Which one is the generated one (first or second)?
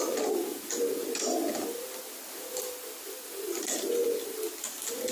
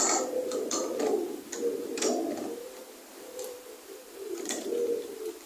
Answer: second